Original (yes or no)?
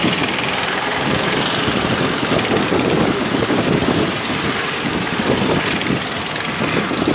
yes